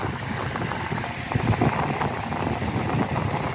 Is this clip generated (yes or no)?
no